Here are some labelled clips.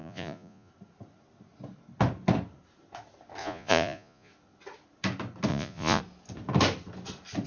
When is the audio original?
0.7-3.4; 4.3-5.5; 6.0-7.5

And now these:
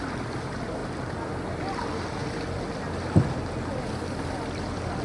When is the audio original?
0.0-5.0

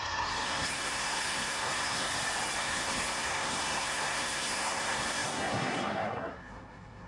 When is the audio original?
2.1-2.6